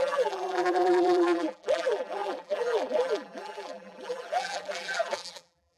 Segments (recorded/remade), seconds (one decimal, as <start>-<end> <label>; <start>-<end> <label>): 0.0-5.8 remade